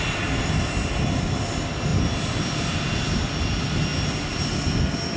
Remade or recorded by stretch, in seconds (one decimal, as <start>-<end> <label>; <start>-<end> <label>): 0.0-5.2 recorded